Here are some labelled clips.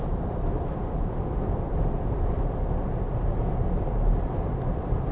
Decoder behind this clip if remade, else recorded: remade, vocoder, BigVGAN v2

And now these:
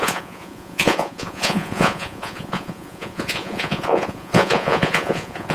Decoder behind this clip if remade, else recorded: remade, vocoder, Vocos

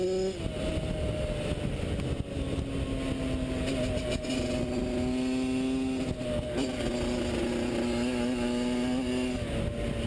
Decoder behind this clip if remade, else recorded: recorded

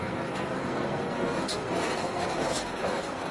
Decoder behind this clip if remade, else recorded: remade, codec, SNAC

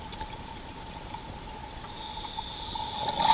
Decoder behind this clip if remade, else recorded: recorded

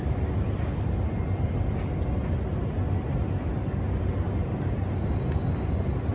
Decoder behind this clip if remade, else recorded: recorded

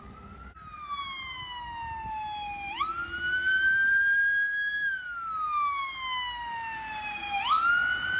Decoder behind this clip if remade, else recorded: recorded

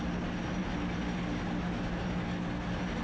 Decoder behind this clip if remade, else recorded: recorded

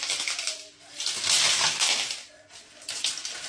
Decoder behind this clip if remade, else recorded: recorded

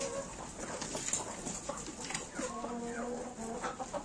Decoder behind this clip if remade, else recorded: recorded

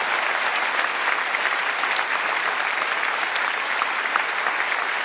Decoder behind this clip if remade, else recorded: recorded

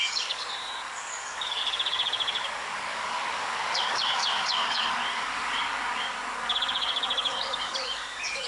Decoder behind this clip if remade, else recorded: remade, codec, DAC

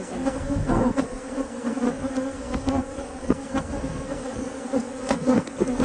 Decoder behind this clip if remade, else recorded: remade, codec, SNAC